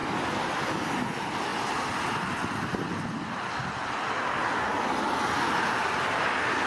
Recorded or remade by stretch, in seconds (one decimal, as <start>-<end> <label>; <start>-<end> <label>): 0.0-6.7 recorded